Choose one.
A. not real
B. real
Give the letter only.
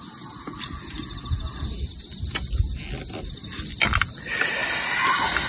B